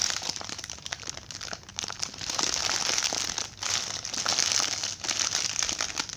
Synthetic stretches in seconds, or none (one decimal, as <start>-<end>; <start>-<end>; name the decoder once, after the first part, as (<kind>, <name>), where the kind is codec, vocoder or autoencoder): 0.0-1.1 (vocoder, BigVGAN v2); 1.7-2.4